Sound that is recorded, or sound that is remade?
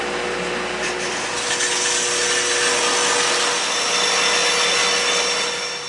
recorded